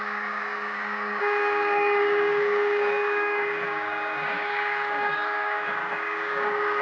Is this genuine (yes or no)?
no